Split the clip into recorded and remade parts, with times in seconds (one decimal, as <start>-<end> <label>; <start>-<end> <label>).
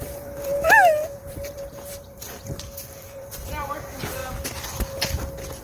0.0-0.5 remade; 0.5-1.1 recorded; 1.1-4.2 remade; 4.2-5.6 recorded